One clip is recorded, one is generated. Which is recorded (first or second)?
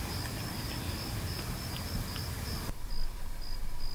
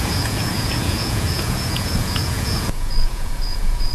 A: first